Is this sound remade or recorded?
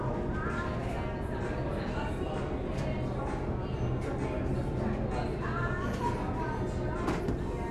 recorded